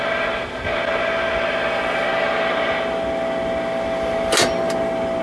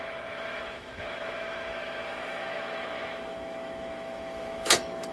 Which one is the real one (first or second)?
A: first